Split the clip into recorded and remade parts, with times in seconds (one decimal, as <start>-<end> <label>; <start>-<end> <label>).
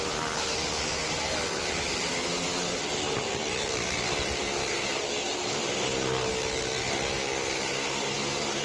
0.0-8.6 recorded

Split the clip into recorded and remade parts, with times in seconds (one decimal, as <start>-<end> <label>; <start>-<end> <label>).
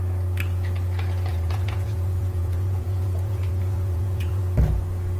0.0-1.3 recorded; 1.3-4.4 remade; 4.4-5.2 recorded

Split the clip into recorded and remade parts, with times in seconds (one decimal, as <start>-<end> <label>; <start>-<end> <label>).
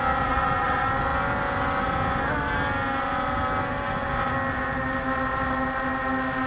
0.0-6.5 recorded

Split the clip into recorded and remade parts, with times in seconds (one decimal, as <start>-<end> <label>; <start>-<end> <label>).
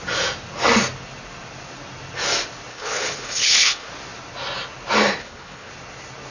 0.0-2.7 recorded; 2.7-3.9 remade; 3.9-5.2 recorded; 5.2-5.7 remade; 5.7-6.3 recorded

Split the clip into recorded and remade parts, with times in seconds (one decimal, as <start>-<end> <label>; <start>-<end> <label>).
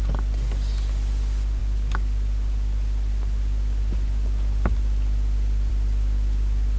0.0-6.8 recorded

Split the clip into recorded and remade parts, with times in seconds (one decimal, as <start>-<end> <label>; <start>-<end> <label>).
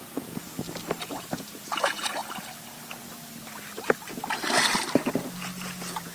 0.0-0.5 remade; 0.5-1.0 recorded; 1.0-2.2 remade; 2.2-6.1 recorded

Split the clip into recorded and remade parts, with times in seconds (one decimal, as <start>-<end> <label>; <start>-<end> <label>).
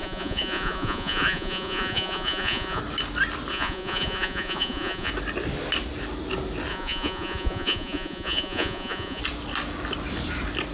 0.0-2.8 remade; 2.8-3.5 recorded; 3.5-5.1 remade; 5.1-6.7 recorded; 6.7-9.2 remade; 9.2-10.7 recorded